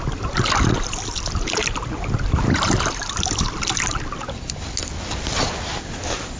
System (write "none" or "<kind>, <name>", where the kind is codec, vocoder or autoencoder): none